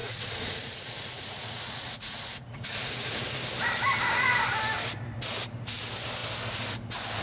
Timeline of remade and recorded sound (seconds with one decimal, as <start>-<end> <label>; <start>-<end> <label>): 0.0-3.4 remade; 3.4-7.2 recorded